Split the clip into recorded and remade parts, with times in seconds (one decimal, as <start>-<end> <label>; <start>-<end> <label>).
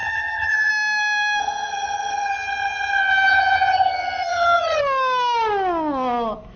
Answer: 0.0-0.7 remade; 0.7-1.4 recorded; 1.4-4.8 remade; 4.8-6.6 recorded